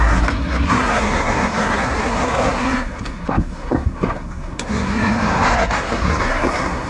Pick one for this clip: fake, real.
fake